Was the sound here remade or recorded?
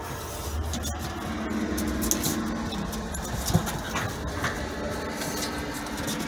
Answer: recorded